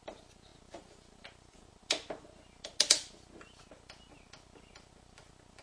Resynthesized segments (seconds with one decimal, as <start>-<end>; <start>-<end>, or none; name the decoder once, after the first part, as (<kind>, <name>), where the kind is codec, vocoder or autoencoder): none